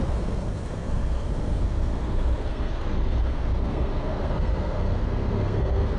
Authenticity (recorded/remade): remade